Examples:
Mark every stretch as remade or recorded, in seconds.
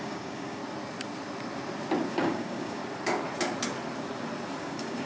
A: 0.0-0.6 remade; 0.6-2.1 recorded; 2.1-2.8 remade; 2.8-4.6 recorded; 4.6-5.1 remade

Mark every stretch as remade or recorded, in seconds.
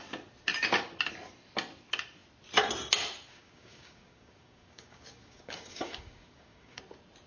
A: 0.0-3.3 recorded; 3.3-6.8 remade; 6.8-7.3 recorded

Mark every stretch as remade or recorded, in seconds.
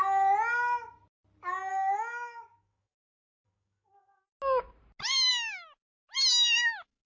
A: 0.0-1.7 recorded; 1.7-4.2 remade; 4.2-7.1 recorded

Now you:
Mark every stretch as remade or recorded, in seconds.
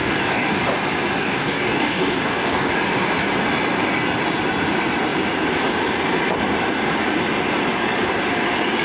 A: 0.0-0.6 remade; 0.6-1.2 recorded; 1.2-2.7 remade; 2.7-8.8 recorded